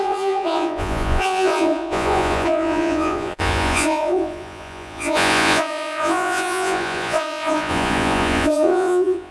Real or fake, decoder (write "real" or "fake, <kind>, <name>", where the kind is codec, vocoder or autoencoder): fake, vocoder, Vocos